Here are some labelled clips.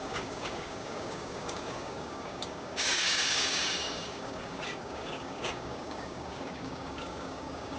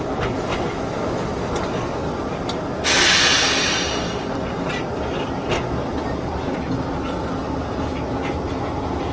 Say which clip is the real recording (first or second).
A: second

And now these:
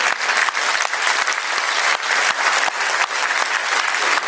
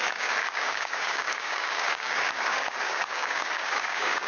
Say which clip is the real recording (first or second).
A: first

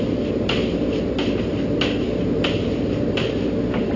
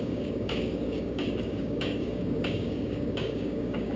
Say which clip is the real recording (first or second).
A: first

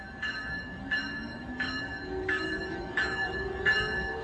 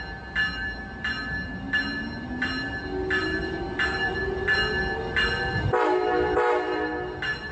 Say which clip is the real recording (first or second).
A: second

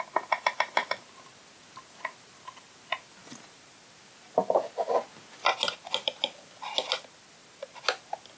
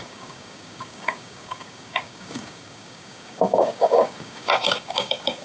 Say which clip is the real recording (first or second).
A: first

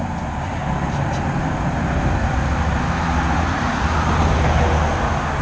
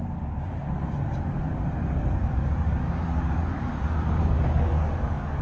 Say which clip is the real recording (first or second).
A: first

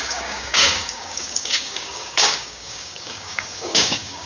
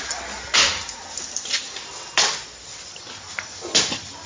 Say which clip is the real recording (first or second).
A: second